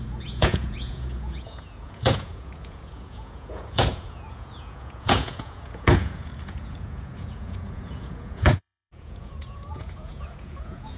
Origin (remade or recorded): remade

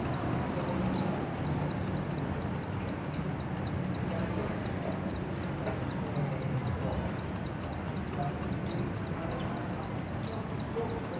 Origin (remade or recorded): recorded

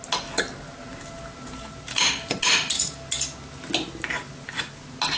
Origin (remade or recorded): recorded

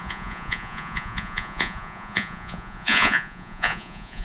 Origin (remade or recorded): remade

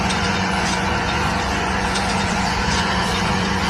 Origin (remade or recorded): remade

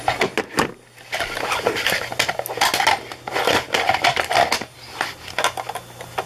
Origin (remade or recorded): recorded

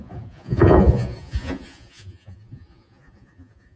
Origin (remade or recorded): remade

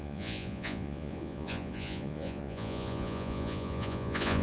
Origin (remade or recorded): remade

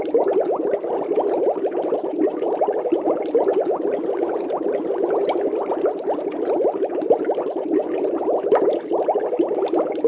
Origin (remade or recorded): recorded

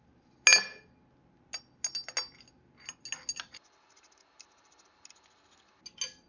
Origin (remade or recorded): recorded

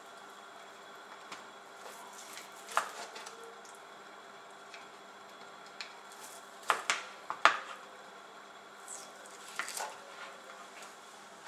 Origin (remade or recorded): recorded